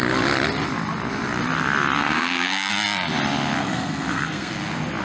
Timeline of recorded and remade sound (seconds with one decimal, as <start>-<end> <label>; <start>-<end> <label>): 0.0-2.0 recorded; 2.0-2.7 remade; 2.7-3.6 recorded; 3.6-4.5 remade; 4.5-5.0 recorded